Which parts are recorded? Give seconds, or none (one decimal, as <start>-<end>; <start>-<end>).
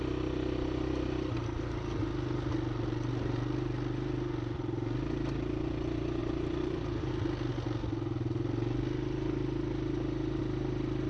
0.0-6.2; 7.1-11.1